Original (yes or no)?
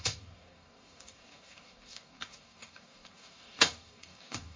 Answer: no